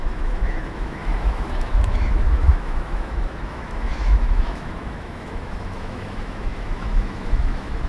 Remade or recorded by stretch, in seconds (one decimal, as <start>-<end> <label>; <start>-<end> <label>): 0.0-7.9 remade